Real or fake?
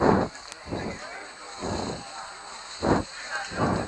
real